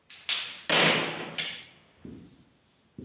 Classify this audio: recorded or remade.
recorded